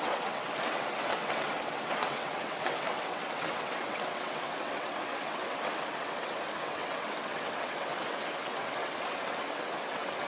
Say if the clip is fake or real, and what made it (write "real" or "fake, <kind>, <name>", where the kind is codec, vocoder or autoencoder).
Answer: fake, vocoder, WaveNeXt